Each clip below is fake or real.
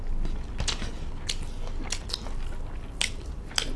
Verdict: real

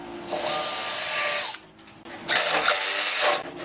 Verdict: real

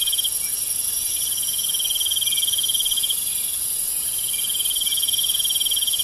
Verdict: real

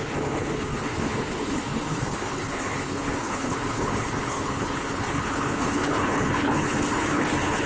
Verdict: fake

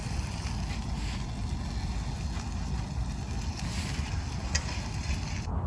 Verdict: real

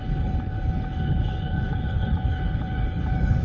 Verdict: fake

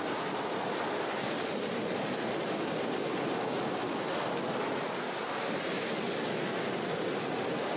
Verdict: real